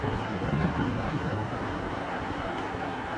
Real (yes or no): no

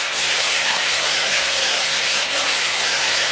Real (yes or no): no